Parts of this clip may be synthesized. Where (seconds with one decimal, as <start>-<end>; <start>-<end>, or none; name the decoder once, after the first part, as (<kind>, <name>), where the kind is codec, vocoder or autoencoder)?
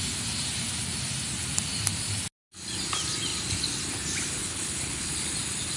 4.4-5.1 (codec, HILCodec)